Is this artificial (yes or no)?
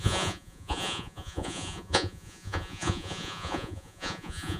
yes